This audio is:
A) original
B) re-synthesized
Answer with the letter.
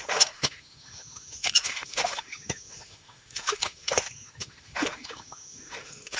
B